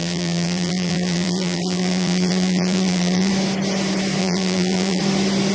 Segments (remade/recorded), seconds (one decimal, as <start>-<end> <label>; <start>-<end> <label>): 0.0-3.3 remade; 3.3-4.2 recorded; 4.2-5.0 remade; 5.0-5.5 recorded